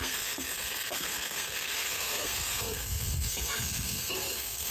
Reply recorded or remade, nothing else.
remade